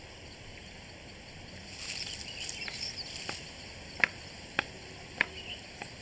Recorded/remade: recorded